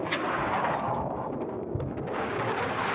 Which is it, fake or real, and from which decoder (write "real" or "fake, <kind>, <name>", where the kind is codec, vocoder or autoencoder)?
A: fake, codec, DAC